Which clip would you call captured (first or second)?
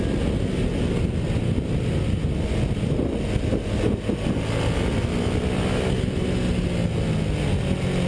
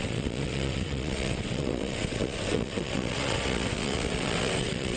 first